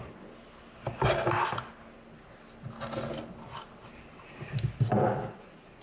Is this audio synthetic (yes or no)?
no